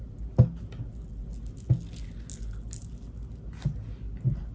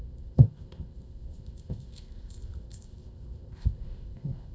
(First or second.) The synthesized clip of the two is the second